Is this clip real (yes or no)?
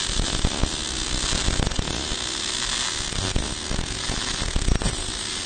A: yes